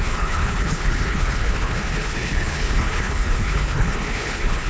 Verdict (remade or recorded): remade